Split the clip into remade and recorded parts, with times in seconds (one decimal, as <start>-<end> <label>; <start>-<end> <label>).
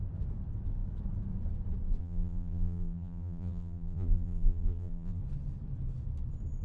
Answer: 0.0-2.0 recorded; 2.0-5.2 remade; 5.2-6.6 recorded